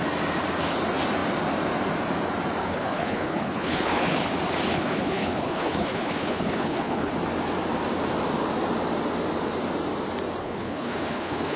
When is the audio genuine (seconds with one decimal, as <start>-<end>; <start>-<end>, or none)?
0.0-2.6; 4.3-4.7; 7.1-10.4